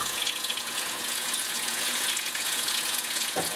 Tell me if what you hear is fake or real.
fake